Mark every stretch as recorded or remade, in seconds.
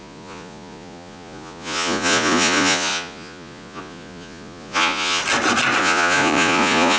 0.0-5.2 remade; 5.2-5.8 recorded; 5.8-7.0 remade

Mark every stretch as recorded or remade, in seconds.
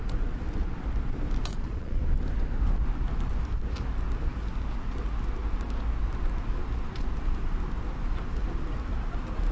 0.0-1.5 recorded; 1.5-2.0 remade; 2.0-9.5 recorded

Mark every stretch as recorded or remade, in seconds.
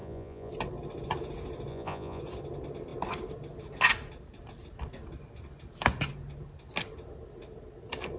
0.0-0.5 remade; 0.5-1.7 recorded; 1.7-2.2 remade; 2.2-8.2 recorded